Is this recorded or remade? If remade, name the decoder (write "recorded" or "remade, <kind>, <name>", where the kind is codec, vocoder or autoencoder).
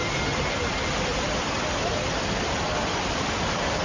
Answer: recorded